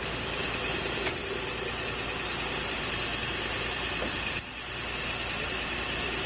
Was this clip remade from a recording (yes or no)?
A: no